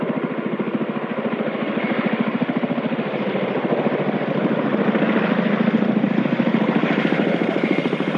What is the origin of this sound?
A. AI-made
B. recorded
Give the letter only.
B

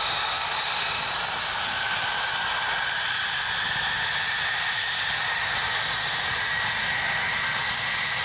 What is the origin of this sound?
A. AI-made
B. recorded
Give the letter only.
B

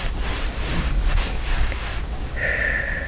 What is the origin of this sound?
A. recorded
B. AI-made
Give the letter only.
A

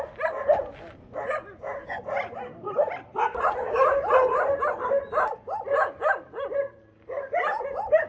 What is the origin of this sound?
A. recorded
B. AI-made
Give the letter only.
A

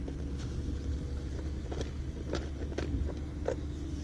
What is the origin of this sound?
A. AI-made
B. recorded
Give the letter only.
B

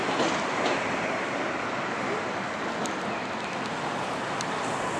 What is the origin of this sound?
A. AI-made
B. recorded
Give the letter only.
B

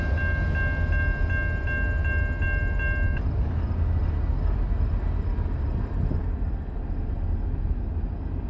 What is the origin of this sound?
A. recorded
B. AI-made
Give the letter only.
A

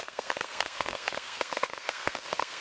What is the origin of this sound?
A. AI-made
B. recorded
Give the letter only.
A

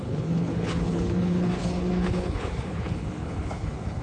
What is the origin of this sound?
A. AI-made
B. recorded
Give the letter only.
A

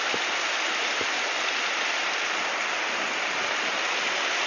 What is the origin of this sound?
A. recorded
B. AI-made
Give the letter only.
A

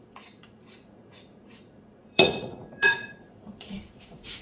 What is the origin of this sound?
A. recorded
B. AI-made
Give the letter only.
B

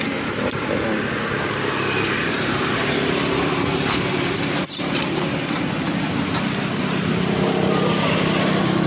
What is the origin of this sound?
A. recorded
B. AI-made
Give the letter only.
B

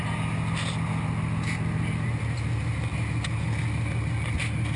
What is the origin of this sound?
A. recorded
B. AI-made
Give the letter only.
A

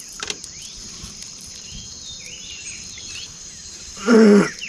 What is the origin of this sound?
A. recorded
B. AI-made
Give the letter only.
B